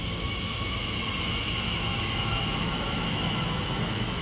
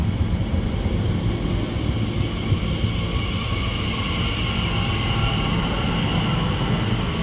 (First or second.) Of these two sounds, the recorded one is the second